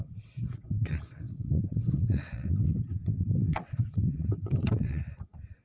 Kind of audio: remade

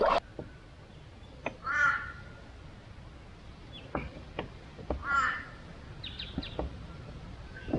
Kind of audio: recorded